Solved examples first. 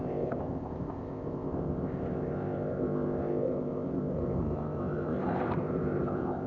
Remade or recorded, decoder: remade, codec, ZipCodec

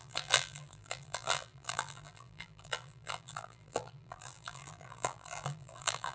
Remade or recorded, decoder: remade, vocoder, BigVGAN v2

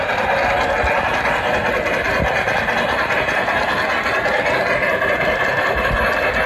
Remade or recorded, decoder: recorded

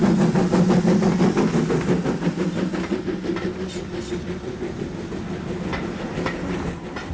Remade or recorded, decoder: recorded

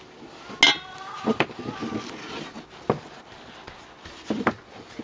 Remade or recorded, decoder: recorded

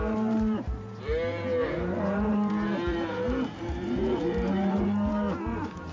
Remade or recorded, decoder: remade, vocoder, BigVGAN v2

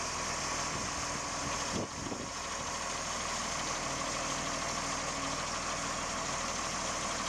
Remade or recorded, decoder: recorded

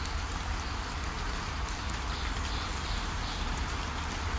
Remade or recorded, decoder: recorded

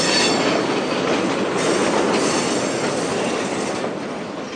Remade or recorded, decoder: recorded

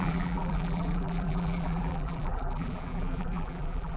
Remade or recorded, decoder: remade, vocoder, BigVGAN v2